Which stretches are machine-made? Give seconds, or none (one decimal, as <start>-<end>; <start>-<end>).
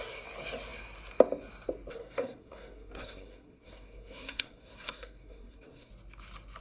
1.9-5.9